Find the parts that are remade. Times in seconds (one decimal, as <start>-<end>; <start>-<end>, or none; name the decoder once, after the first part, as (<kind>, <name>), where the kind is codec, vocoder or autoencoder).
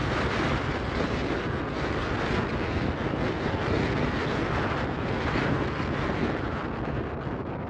0.0-1.4 (vocoder, BigVGAN v2)